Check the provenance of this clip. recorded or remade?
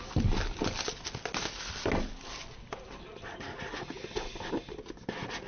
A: recorded